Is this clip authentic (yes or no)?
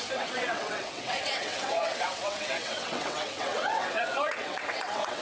no